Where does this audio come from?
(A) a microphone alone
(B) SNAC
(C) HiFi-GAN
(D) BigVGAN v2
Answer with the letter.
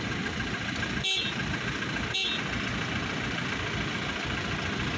A